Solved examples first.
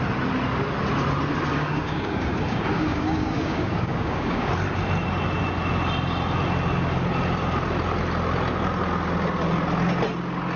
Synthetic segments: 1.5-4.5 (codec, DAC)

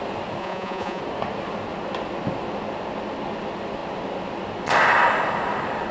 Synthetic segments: 0.4-1.0 (vocoder, Vocos)

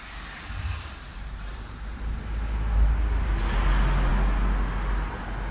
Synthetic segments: 1.1-2.2 (vocoder, BigVGAN v2)